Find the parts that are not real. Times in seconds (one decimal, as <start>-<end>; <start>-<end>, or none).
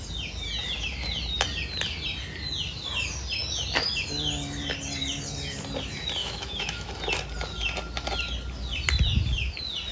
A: 6.2-6.9